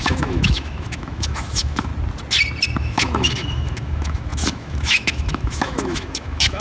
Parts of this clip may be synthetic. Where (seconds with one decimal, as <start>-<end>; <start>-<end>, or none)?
0.0-1.9; 2.8-6.6